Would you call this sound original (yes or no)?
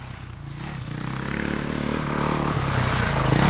yes